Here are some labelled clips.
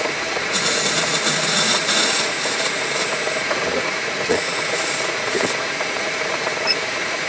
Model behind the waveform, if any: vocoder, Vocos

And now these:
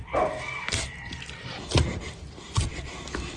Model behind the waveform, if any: none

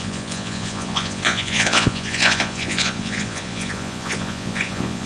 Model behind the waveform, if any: vocoder, Vocos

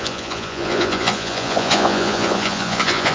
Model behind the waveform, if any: vocoder, Vocos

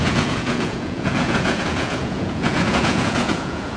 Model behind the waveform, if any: vocoder, Vocos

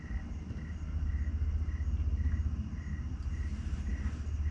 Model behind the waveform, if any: none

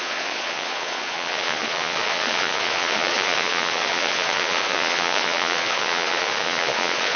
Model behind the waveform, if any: vocoder, Vocos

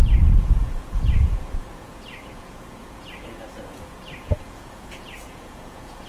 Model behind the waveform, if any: vocoder, Vocos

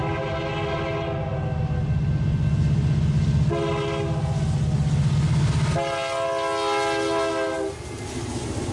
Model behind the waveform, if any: none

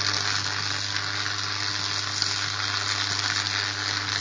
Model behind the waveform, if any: none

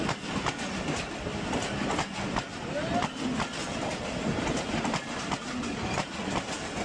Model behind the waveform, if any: none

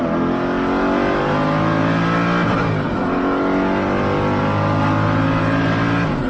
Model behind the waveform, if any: none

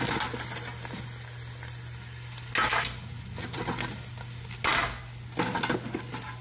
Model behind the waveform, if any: none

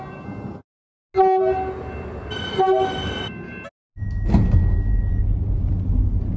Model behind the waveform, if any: none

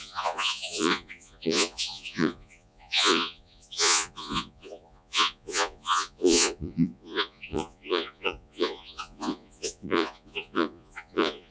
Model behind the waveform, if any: vocoder, Vocos